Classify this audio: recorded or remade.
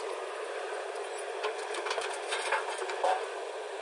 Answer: remade